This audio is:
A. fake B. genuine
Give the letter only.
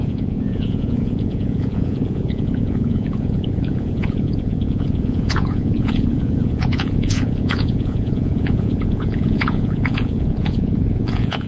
A